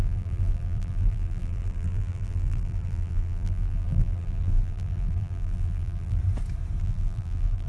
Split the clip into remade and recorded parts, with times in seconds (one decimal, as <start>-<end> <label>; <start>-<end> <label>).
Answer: 0.0-6.2 remade; 6.2-6.8 recorded; 6.8-7.7 remade